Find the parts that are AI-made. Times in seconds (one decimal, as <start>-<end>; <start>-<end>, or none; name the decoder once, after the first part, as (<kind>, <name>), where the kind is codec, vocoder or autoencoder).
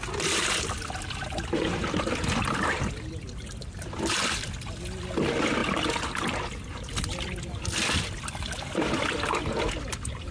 none